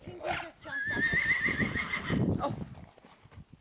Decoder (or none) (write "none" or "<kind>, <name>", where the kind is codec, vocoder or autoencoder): none